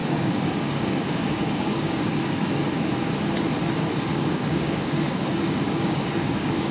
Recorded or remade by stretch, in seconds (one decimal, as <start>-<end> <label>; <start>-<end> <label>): 0.0-2.6 remade; 2.6-4.1 recorded; 4.1-6.7 remade

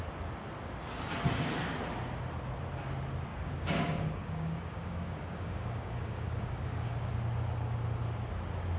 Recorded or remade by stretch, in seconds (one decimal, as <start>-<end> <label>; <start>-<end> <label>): 0.0-3.3 recorded; 3.3-7.1 remade; 7.1-8.8 recorded